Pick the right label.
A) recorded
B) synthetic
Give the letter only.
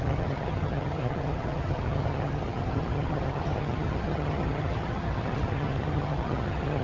B